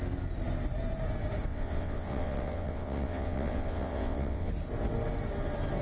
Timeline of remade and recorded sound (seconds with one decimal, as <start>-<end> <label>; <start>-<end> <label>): 0.0-1.5 recorded; 1.5-4.5 remade; 4.5-5.8 recorded